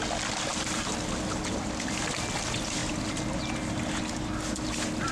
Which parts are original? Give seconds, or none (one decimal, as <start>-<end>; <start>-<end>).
0.0-0.5; 1.0-5.1